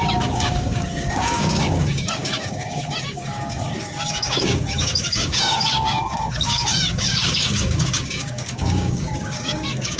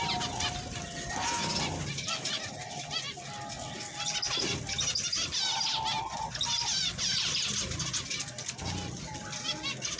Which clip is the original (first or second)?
second